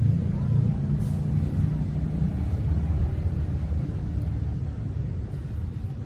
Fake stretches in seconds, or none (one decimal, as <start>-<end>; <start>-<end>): none